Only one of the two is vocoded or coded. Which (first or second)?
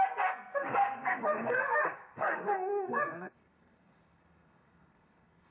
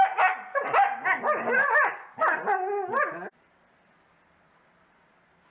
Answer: first